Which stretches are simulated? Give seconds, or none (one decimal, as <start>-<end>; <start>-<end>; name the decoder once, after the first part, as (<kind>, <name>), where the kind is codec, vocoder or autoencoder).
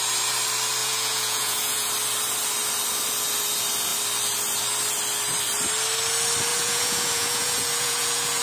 0.8-1.9 (vocoder, Vocos); 6.5-8.4